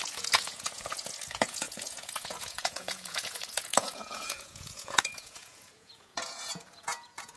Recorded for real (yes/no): no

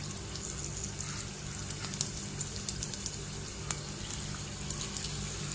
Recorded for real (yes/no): yes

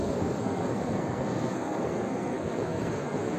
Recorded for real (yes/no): no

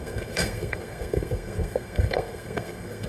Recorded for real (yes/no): no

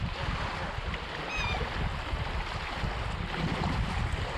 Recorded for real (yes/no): yes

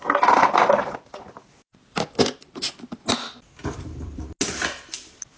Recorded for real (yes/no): yes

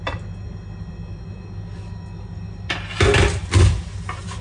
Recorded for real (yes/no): yes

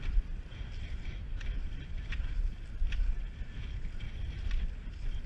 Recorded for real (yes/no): yes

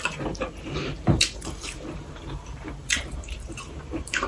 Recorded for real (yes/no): no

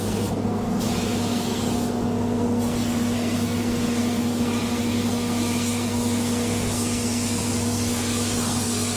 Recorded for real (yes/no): no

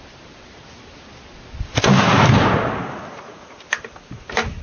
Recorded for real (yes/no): yes